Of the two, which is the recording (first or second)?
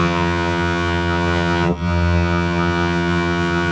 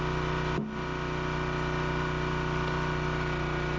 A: second